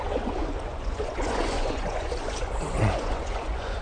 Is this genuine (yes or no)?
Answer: no